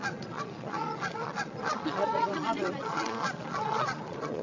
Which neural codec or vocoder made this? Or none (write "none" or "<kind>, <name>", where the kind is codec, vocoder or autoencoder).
vocoder, Vocos